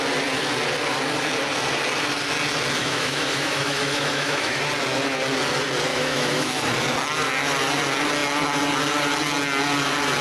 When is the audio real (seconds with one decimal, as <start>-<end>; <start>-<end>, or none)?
0.0-2.8; 4.6-5.9; 6.6-10.2